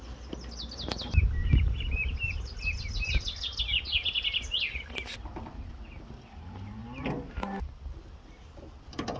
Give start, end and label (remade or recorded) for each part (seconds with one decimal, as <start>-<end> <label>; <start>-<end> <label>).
0.0-1.4 recorded; 1.4-3.6 remade; 3.6-9.2 recorded